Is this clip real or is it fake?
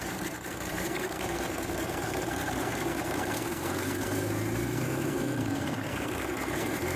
fake